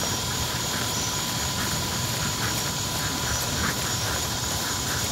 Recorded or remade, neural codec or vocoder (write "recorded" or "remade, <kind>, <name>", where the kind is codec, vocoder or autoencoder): remade, vocoder, BigVGAN v2